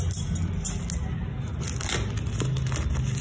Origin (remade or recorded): recorded